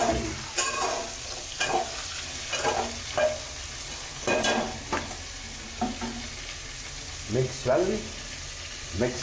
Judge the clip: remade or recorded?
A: recorded